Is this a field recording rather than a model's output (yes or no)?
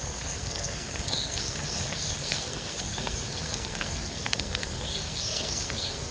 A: no